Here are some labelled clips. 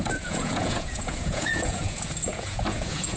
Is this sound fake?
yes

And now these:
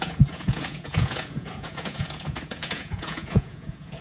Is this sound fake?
yes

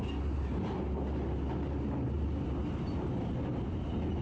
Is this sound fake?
no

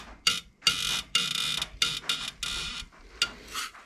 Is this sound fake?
no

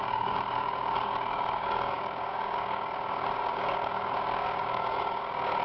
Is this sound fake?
yes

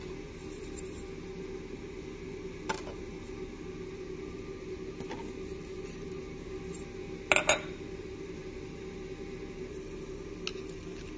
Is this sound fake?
no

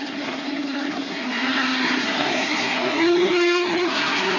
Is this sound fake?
yes